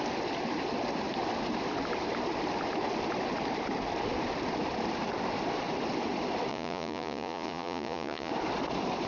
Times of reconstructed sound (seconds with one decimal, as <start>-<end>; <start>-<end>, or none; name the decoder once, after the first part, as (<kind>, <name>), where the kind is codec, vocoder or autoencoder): 6.5-8.3 (vocoder, Vocos)